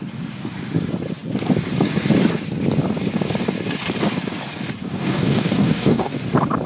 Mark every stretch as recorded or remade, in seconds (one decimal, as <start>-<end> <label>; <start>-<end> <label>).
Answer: 0.0-4.8 recorded; 4.8-6.2 remade; 6.2-6.7 recorded